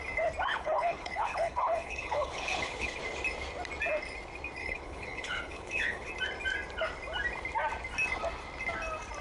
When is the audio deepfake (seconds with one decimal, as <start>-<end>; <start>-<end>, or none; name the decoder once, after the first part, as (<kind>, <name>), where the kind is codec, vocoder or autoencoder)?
0.5-3.0 (codec, HILCodec); 4.6-6.1